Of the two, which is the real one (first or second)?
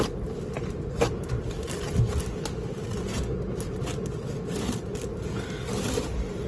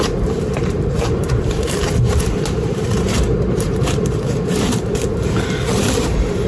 first